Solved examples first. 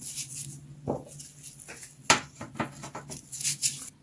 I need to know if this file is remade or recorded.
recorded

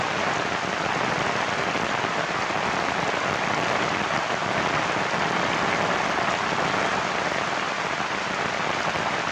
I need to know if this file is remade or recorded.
recorded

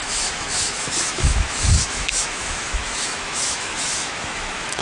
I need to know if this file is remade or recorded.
remade